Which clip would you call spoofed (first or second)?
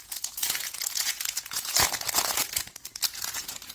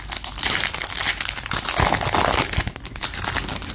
first